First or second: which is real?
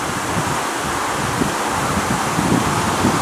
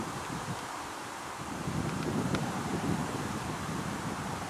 first